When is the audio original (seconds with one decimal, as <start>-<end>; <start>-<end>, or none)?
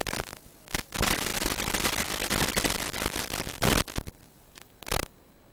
0.0-5.5